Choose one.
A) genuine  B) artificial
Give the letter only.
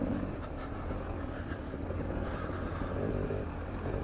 A